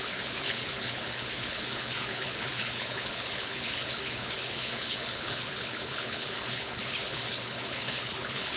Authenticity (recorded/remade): remade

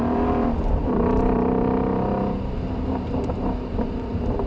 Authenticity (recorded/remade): remade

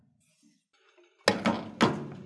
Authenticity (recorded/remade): recorded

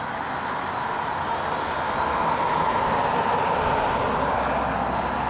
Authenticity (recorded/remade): recorded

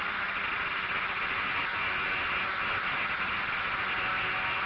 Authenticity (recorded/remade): recorded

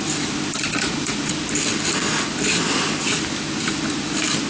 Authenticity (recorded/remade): recorded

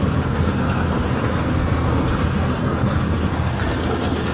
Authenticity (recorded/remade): remade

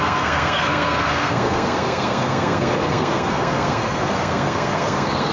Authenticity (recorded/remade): remade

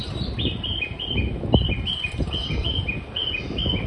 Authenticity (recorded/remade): remade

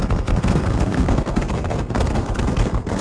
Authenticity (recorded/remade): remade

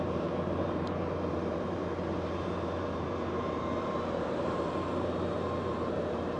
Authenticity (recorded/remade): remade